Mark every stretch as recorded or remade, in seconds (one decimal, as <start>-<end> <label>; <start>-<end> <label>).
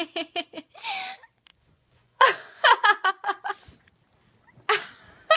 0.0-1.5 recorded; 1.5-3.1 remade; 3.1-5.4 recorded